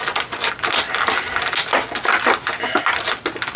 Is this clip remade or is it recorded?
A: recorded